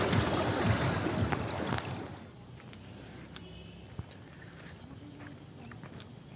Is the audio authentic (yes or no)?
yes